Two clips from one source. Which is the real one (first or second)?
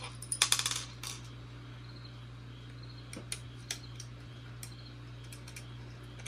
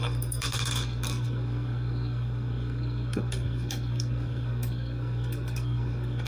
first